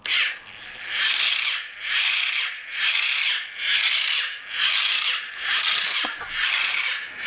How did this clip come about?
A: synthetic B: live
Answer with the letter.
B